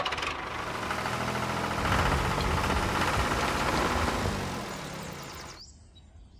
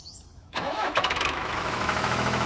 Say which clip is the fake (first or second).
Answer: second